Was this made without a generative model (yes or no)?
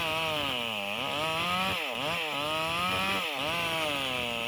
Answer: yes